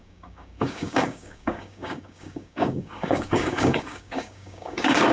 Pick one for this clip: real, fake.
fake